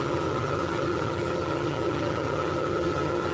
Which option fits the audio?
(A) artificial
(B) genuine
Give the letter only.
A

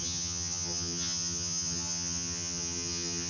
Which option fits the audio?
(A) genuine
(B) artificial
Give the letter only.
B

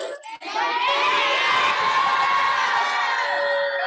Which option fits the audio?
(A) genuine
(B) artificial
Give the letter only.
A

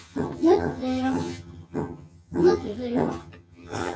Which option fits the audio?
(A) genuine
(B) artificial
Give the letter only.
B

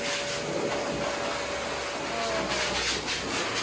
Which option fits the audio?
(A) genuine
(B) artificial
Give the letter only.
A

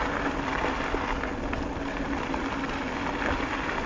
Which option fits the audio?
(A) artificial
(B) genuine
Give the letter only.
B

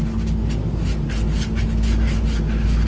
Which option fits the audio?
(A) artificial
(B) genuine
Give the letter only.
B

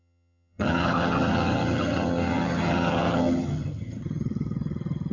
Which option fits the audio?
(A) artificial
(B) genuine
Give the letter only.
A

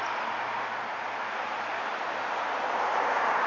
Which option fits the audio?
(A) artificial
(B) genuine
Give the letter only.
B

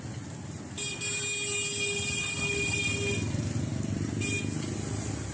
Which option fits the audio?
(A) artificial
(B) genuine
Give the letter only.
B